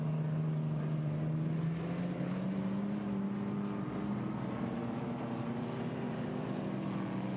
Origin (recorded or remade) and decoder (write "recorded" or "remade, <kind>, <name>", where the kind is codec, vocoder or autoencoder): recorded